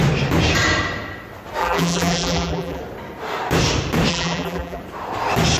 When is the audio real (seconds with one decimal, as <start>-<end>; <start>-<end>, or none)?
0.0-1.6; 2.8-4.1; 4.8-5.6